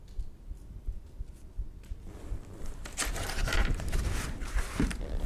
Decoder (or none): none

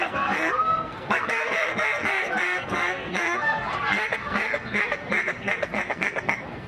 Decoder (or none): codec, SNAC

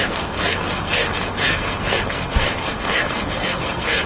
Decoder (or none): codec, SNAC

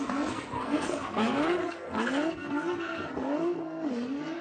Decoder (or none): codec, SNAC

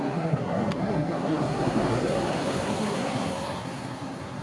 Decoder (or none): codec, SNAC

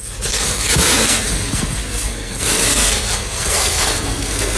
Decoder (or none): codec, SNAC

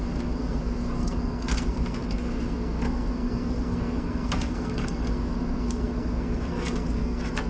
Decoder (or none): codec, SNAC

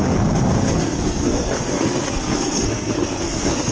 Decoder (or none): codec, SNAC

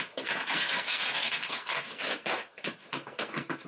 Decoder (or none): codec, SNAC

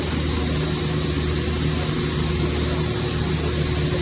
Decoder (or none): none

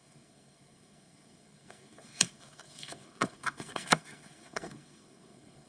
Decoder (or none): codec, SNAC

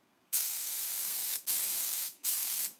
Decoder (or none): codec, SNAC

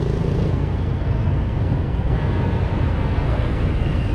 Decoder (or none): codec, SNAC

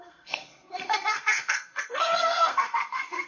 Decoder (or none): codec, SNAC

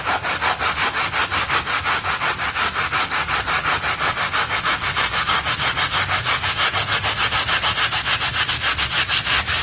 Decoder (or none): none